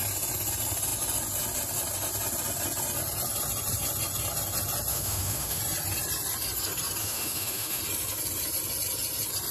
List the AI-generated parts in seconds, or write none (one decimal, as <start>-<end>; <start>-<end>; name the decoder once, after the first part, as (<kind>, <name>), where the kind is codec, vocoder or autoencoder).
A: 4.9-5.6 (autoencoder, DAC-VAE); 7.0-7.8